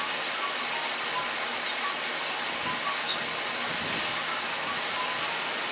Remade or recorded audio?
recorded